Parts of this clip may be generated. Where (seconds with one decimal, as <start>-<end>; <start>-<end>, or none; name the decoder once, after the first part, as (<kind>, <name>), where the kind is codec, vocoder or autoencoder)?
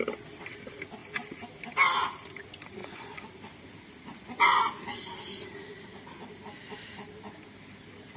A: 2.8-3.3 (vocoder, Vocos); 4.1-4.6